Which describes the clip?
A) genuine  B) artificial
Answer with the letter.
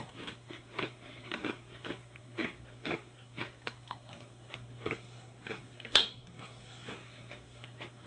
B